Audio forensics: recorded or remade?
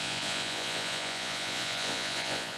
remade